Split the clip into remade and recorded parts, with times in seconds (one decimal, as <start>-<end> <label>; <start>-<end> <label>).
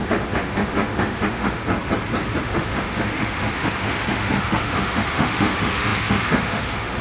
0.0-1.6 remade; 1.6-2.4 recorded; 2.4-7.0 remade